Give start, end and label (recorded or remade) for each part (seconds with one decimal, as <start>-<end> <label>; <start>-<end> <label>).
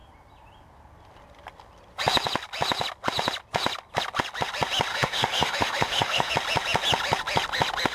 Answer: 0.0-4.9 recorded; 4.9-6.3 remade; 6.3-7.9 recorded